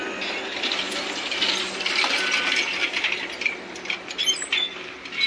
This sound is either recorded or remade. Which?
recorded